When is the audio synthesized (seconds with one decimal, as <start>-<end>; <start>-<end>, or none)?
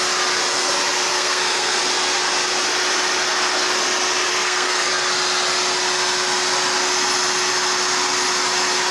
1.1-1.8; 4.3-4.9